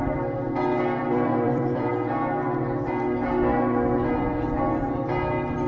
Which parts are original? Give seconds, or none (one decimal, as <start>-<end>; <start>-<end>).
0.0-1.0; 1.9-5.7